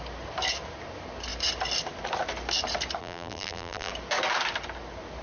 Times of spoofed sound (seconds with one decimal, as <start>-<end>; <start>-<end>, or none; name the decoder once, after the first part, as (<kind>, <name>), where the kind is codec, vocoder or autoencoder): 3.0-3.9 (vocoder, BigVGAN v2)